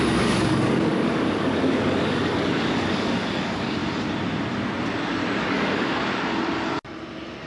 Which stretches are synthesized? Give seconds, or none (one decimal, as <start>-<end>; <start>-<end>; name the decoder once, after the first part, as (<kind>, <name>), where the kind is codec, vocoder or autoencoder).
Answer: 0.0-3.8 (codec, DAC); 5.4-5.9